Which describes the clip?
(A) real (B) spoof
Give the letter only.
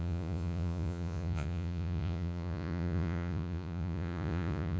B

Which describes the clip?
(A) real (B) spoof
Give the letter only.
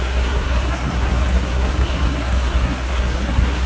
B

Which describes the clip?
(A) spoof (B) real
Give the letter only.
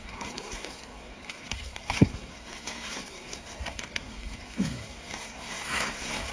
A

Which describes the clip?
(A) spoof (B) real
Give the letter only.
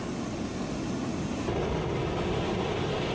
B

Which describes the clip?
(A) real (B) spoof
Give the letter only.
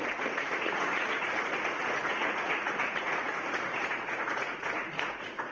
B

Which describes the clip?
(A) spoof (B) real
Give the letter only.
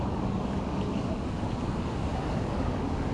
A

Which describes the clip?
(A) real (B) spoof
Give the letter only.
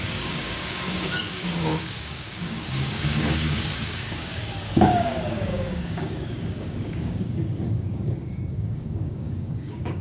B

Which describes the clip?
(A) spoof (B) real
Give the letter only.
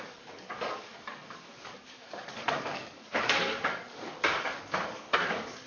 A